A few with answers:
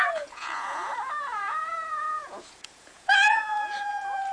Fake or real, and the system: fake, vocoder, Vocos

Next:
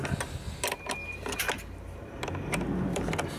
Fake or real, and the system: real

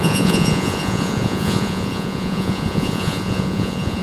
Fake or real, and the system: fake, vocoder, Vocos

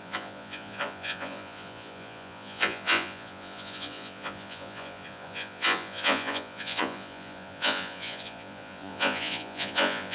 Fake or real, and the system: fake, vocoder, Vocos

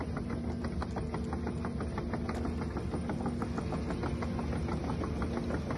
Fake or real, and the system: real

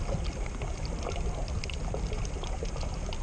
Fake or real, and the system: real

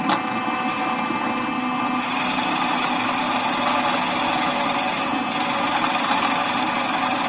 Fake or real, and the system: real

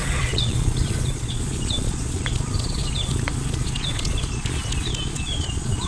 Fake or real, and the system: fake, vocoder, Vocos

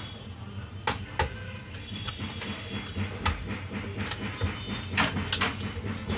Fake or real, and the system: real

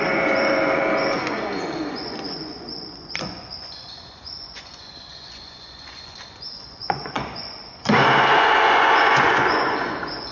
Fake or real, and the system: fake, vocoder, Vocos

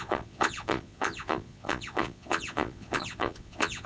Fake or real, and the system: fake, vocoder, Vocos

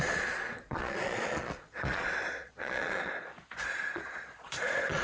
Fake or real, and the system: fake, vocoder, Vocos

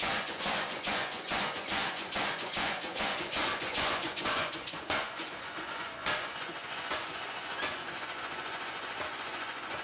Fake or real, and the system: fake, vocoder, Vocos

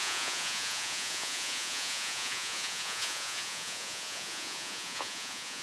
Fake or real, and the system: fake, vocoder, Vocos